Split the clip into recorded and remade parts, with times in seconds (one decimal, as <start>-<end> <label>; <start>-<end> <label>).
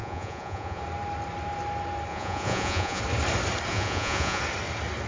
0.0-0.8 remade; 0.8-2.1 recorded; 2.1-3.0 remade; 3.0-3.7 recorded; 3.7-4.4 remade; 4.4-5.1 recorded